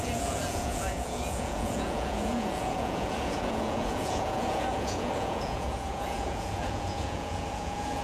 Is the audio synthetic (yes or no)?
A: yes